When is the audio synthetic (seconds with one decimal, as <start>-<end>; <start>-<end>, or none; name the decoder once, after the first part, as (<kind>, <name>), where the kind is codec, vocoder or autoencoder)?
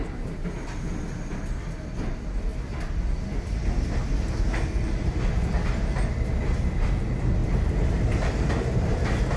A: none